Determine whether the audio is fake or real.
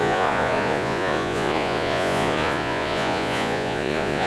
fake